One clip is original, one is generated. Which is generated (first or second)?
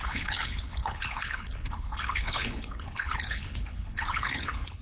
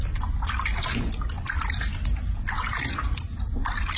first